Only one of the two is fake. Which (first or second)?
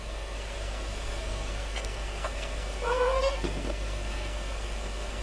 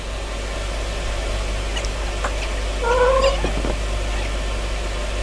first